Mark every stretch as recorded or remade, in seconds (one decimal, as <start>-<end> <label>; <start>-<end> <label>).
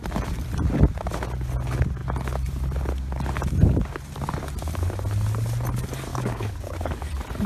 0.0-6.1 recorded; 6.1-7.1 remade; 7.1-7.5 recorded